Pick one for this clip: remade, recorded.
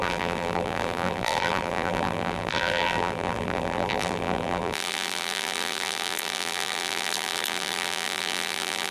remade